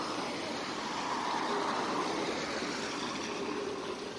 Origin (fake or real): real